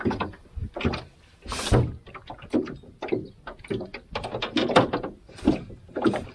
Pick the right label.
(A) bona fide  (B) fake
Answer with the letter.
A